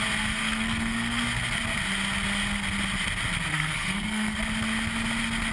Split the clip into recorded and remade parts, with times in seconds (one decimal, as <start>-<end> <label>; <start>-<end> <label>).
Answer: 0.0-0.4 recorded; 0.4-1.2 remade; 1.2-3.5 recorded; 3.5-4.4 remade; 4.4-5.5 recorded